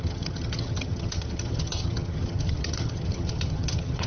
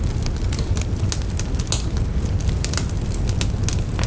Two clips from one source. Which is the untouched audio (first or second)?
second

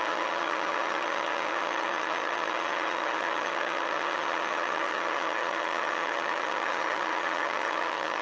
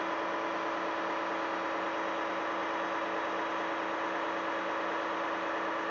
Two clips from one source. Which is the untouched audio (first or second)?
second